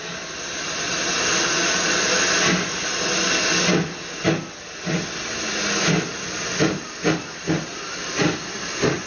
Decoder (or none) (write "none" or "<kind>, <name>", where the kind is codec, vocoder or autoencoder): none